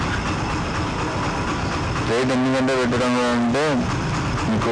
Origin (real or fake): real